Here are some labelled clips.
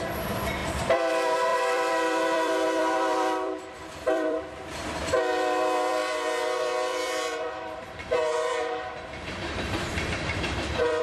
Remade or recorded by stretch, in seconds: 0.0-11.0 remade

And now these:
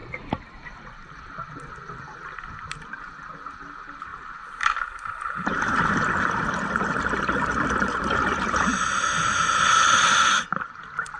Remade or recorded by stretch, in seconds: 0.0-4.1 recorded; 4.1-5.5 remade; 5.5-11.2 recorded

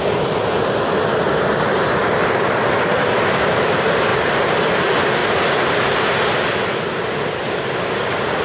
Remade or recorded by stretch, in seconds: 0.0-8.4 recorded

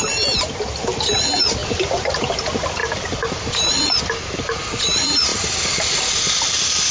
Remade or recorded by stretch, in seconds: 0.0-1.6 recorded; 1.6-2.1 remade; 2.1-2.8 recorded; 2.8-4.0 remade; 4.0-5.3 recorded; 5.3-5.8 remade; 5.8-6.9 recorded

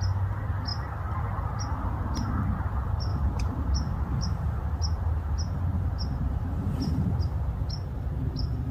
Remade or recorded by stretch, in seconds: 0.0-3.1 recorded; 3.1-7.2 remade; 7.2-8.7 recorded

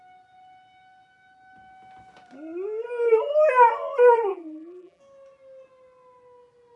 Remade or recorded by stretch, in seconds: 0.0-4.3 recorded; 4.3-5.0 remade; 5.0-6.8 recorded